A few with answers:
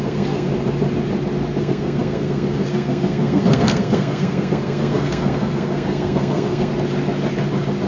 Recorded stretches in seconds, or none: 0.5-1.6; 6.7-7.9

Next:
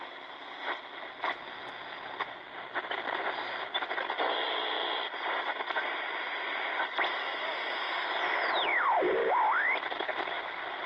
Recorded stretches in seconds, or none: 0.0-10.9